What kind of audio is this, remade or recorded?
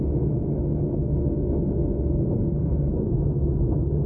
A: remade